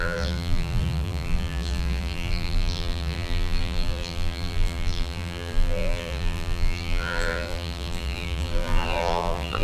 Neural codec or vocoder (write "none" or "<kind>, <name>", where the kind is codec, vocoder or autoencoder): vocoder, BigVGAN v2